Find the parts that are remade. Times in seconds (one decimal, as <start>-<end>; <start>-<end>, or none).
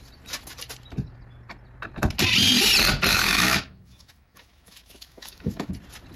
3.1-5.7